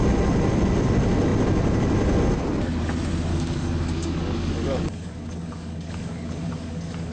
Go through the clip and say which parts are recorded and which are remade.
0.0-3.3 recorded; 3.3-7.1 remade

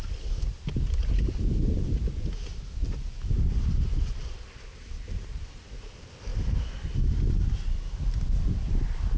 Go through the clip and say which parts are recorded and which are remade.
0.0-9.2 recorded

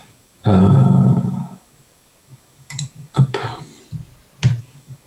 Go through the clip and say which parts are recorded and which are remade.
0.0-3.7 remade; 3.7-4.6 recorded; 4.6-5.1 remade

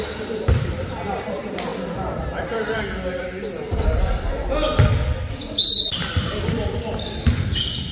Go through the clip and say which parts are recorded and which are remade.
0.0-7.9 recorded

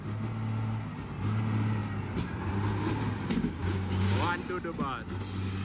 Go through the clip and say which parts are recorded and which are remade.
0.0-3.6 recorded; 3.6-4.2 remade; 4.2-5.6 recorded

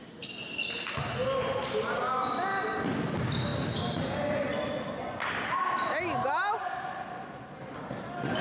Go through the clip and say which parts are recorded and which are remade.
0.0-8.4 recorded

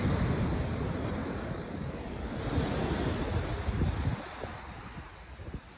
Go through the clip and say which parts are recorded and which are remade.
0.0-1.2 recorded; 1.2-2.3 remade; 2.3-5.8 recorded